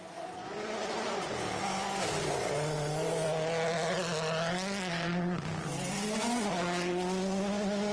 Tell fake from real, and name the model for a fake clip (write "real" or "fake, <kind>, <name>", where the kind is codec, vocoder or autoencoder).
real